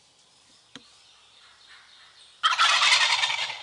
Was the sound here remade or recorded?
recorded